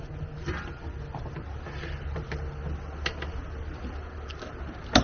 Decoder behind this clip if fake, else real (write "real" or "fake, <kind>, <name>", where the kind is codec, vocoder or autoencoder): real